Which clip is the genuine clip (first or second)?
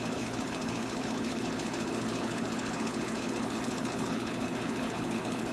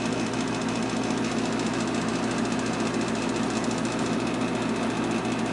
second